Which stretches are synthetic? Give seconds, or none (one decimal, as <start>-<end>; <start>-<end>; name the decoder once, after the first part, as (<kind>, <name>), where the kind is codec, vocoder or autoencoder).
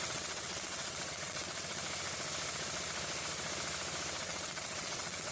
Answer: 0.0-1.8 (vocoder, WaveNeXt); 4.2-5.3